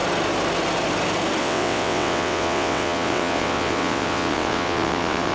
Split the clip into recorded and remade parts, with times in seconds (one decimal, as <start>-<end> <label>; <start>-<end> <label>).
0.0-1.4 recorded; 1.4-5.3 remade